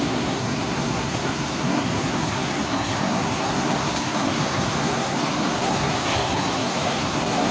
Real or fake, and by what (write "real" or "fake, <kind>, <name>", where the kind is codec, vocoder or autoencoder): fake, codec, SNAC